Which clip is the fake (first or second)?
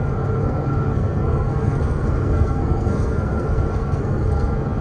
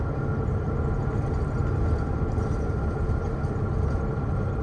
first